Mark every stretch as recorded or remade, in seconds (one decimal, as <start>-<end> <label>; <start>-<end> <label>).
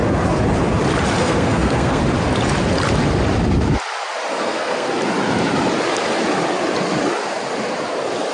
0.0-1.2 recorded; 1.2-2.0 remade; 2.0-4.3 recorded; 4.3-4.9 remade; 4.9-8.3 recorded